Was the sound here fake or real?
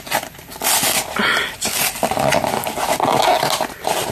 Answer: real